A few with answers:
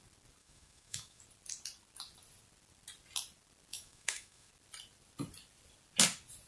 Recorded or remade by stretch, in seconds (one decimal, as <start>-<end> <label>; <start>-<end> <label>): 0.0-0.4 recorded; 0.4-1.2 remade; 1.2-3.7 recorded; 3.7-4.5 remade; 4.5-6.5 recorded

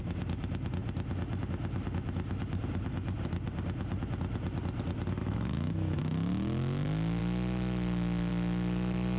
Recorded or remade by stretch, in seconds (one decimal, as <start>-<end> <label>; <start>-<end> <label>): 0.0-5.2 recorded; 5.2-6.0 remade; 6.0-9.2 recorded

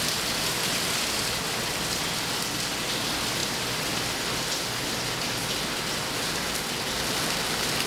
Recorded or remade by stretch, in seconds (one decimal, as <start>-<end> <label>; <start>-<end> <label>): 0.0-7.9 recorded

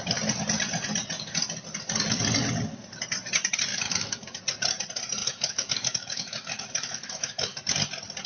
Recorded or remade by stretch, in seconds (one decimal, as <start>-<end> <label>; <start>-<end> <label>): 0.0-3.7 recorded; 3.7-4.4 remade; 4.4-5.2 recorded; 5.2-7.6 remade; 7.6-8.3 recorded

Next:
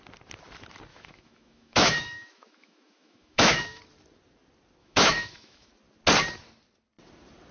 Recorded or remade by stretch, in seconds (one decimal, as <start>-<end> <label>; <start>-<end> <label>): 0.0-0.9 recorded; 0.9-3.8 remade; 3.8-4.8 recorded; 4.8-5.7 remade; 5.7-7.5 recorded

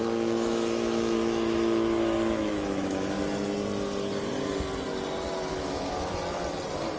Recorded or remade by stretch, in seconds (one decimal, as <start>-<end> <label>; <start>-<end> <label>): 0.0-3.2 remade; 3.2-5.5 recorded; 5.5-6.1 remade; 6.1-7.0 recorded

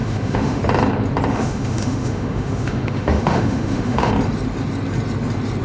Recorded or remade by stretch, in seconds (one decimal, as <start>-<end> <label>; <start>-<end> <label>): 0.0-0.6 remade; 0.6-1.3 recorded; 1.3-4.1 remade; 4.1-5.6 recorded